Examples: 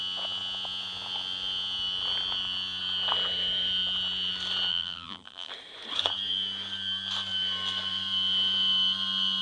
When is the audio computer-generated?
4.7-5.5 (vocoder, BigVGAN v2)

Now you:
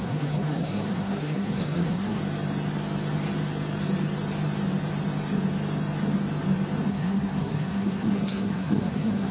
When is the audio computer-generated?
0.0-2.2 (codec, SNAC); 6.9-9.3